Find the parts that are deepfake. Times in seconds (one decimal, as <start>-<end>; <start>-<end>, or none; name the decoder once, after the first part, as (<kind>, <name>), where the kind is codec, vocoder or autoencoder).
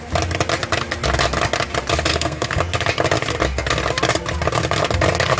2.1-2.6 (codec, SNAC)